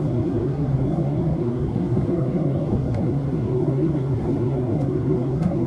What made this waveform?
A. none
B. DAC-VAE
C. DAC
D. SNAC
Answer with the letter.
D